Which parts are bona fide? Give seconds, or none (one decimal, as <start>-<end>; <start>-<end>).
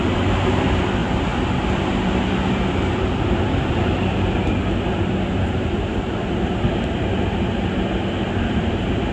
0.0-9.1